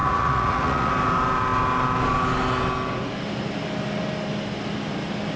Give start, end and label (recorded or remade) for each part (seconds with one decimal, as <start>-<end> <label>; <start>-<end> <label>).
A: 0.0-0.9 remade; 0.9-5.4 recorded